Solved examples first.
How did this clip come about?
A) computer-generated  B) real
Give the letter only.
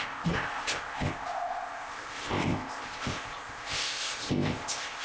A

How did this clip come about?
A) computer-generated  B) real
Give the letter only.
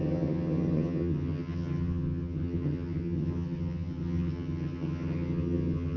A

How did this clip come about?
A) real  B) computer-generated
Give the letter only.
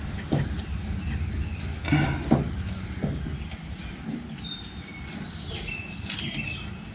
A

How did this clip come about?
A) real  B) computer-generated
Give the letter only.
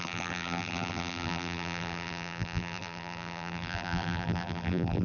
B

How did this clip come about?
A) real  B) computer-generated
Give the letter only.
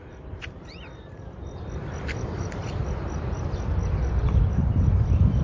B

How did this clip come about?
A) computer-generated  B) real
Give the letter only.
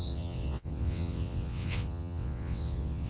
A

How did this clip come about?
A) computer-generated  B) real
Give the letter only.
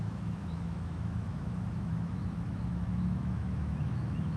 A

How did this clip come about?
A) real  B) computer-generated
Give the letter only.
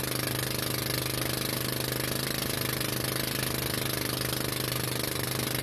A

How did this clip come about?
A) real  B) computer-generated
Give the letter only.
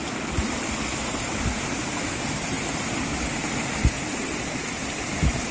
A